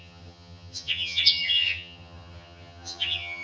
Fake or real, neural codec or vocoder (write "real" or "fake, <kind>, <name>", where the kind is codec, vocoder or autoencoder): fake, vocoder, HiFi-GAN